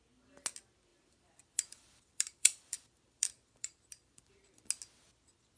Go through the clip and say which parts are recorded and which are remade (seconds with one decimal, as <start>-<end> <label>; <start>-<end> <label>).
0.0-0.9 recorded; 0.9-4.3 remade; 4.3-5.6 recorded